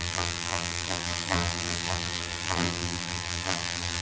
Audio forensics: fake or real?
fake